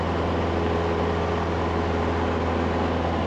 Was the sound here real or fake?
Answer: real